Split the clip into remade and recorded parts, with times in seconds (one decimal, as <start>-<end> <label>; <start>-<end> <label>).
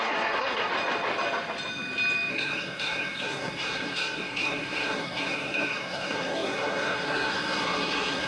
0.0-0.7 remade; 0.7-2.3 recorded; 2.3-8.3 remade